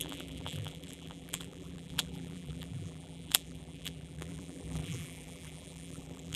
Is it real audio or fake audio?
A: fake